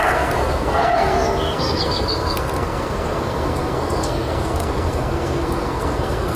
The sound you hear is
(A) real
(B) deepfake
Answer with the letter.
B